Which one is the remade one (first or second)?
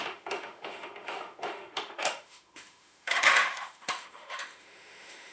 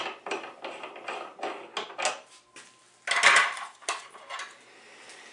first